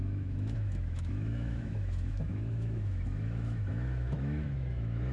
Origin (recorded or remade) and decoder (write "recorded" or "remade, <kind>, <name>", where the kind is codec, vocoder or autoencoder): remade, autoencoder, DAC-VAE